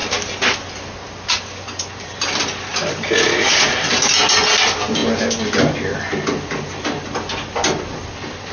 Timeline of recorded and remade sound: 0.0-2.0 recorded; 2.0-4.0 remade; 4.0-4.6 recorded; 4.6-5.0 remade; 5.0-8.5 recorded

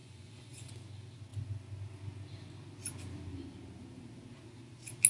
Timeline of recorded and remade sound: 0.0-0.7 remade; 0.7-5.1 recorded

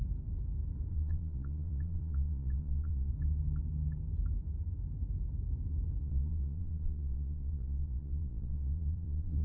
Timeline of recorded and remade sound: 0.0-0.9 recorded; 0.9-3.1 remade; 3.1-6.0 recorded; 6.0-9.4 remade

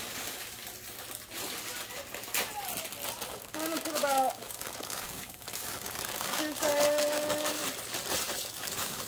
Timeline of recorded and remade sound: 0.0-0.6 remade; 0.6-3.3 recorded; 3.3-7.6 remade; 7.6-8.5 recorded; 8.5-9.1 remade